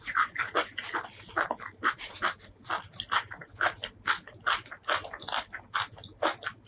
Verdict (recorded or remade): recorded